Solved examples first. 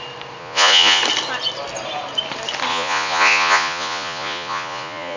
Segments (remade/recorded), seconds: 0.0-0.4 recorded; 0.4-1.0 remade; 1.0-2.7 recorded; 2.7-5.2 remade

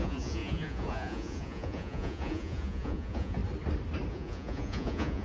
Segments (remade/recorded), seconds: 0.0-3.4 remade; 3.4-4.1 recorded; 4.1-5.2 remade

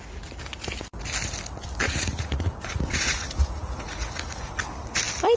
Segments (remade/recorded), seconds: 0.0-1.8 recorded; 1.8-4.6 remade; 4.6-5.4 recorded

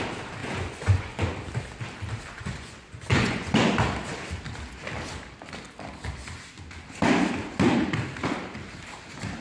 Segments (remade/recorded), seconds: 0.0-0.4 recorded; 0.4-1.2 remade; 1.2-2.4 recorded; 2.4-3.7 remade; 3.7-9.4 recorded